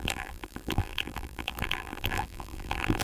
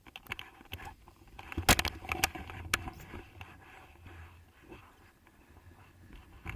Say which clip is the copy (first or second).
first